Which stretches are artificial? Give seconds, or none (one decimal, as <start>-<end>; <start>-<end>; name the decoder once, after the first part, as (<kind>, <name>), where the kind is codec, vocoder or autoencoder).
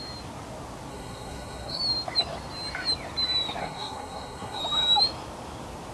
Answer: 0.9-1.8 (codec, SNAC); 3.6-4.6